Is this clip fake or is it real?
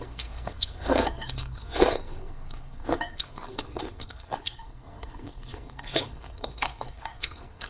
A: fake